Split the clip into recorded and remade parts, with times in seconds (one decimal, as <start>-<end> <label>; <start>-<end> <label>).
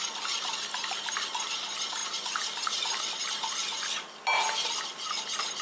0.0-5.6 recorded